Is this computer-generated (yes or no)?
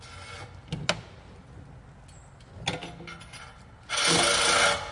no